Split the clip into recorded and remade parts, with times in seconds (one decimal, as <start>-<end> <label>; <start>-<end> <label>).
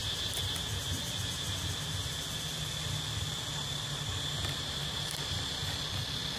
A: 0.0-3.8 recorded; 3.8-5.6 remade; 5.6-6.4 recorded